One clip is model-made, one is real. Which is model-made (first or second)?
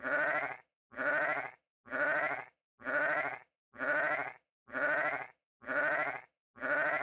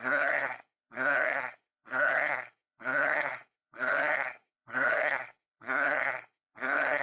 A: second